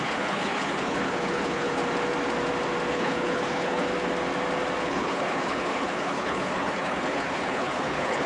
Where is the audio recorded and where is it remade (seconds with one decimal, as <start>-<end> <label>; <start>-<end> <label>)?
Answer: 0.0-1.8 remade; 1.8-2.9 recorded; 2.9-3.9 remade; 3.9-4.8 recorded; 4.8-8.3 remade